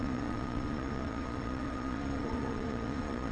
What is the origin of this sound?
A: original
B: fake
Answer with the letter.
B